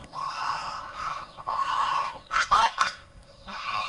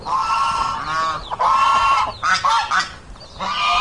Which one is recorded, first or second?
second